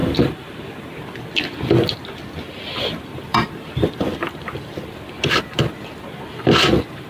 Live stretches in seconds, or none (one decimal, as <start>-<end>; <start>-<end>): 0.0-3.3; 5.4-7.1